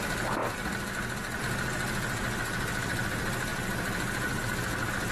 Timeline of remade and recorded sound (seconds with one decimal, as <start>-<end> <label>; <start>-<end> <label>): 0.0-5.1 recorded